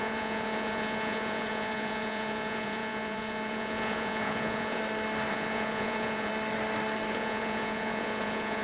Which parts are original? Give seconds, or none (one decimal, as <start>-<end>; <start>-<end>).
4.8-5.3; 6.3-7.1